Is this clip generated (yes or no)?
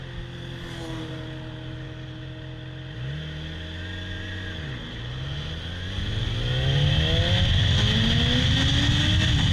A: no